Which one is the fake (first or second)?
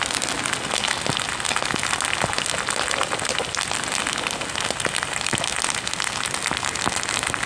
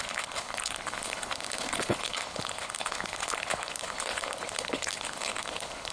second